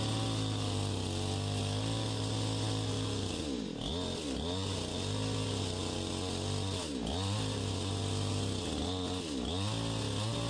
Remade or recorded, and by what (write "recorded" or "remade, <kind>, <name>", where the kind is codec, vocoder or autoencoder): recorded